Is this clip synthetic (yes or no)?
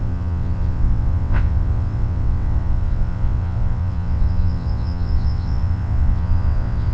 yes